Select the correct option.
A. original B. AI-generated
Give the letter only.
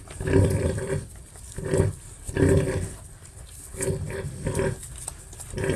A